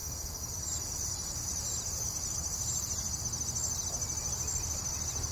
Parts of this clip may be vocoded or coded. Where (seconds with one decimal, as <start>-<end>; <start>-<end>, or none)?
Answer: 0.0-3.2